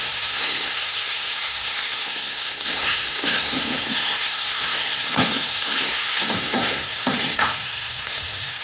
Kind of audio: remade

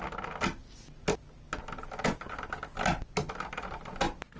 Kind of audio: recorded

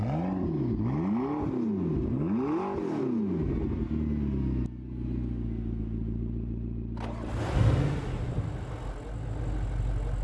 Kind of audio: recorded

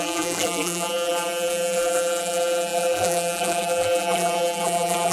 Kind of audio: remade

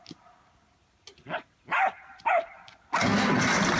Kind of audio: recorded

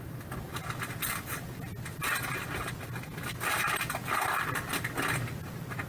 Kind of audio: recorded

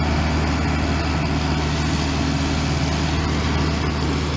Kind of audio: recorded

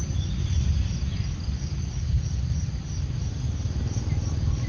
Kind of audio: recorded